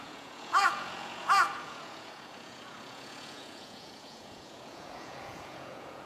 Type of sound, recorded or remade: remade